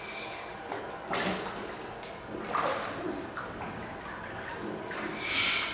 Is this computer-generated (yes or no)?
no